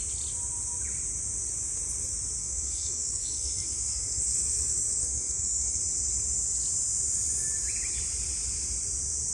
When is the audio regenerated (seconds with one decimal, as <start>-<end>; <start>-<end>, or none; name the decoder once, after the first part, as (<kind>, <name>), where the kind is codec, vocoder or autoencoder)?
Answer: 2.4-5.8 (codec, SNAC)